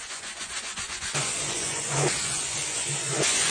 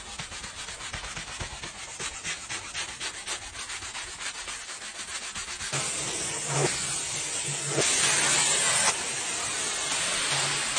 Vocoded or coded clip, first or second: first